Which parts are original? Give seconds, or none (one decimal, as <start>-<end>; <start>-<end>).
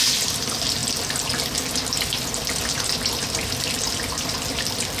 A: 0.8-2.7